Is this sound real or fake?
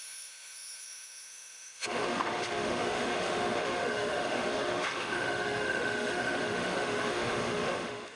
fake